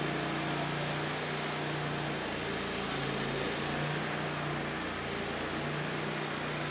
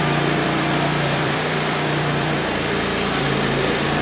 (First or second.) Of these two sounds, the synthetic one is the second